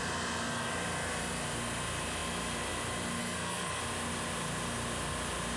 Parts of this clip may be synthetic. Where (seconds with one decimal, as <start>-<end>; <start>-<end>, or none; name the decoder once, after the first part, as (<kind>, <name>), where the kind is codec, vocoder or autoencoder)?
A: 3.2-3.8 (codec, SNAC)